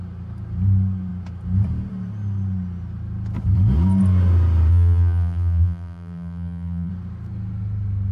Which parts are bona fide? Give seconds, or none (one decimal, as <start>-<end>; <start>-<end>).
0.0-4.7; 6.9-8.1